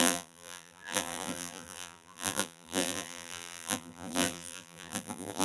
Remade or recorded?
remade